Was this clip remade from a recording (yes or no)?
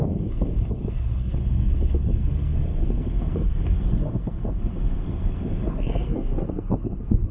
yes